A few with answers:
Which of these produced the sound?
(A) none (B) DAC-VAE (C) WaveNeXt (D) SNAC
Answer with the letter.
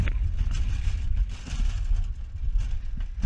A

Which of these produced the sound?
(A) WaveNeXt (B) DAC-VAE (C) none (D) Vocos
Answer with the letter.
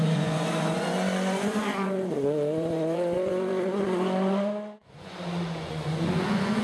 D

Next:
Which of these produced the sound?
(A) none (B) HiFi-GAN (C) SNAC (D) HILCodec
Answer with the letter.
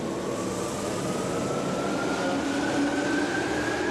A